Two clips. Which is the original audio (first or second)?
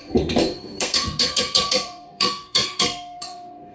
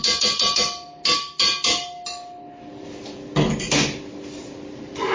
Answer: second